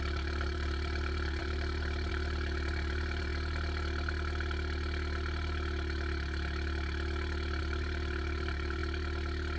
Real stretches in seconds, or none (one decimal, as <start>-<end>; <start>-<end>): 3.3-7.6; 8.8-9.6

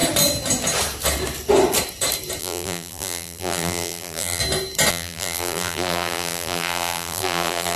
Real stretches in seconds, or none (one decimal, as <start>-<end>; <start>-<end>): 0.0-2.4; 4.4-4.9

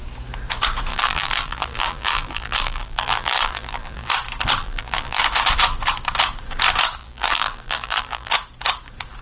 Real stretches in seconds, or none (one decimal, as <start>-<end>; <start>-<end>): 0.0-0.9; 4.1-4.6; 5.2-7.0; 8.3-9.2

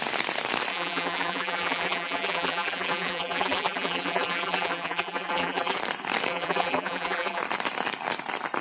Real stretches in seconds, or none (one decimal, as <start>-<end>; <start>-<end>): 0.0-0.7; 5.8-6.3; 7.4-8.6